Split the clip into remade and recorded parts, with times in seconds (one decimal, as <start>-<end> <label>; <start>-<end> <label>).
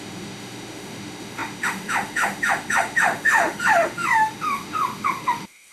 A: 0.0-5.7 remade